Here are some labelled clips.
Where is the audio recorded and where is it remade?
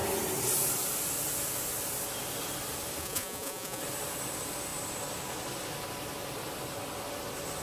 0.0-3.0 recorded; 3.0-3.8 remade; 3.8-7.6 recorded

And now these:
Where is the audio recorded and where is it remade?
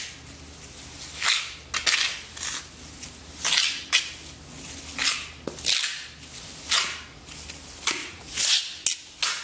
0.0-8.0 recorded; 8.0-8.6 remade; 8.6-9.4 recorded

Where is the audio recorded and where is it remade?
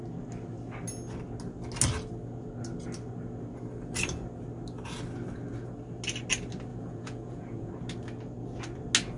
0.0-6.7 recorded; 6.7-7.7 remade; 7.7-9.2 recorded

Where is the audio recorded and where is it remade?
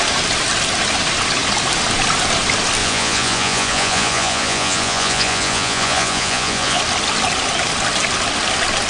0.0-2.8 recorded; 2.8-6.8 remade; 6.8-8.9 recorded